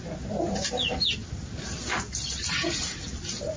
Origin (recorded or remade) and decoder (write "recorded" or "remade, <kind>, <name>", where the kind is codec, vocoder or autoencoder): recorded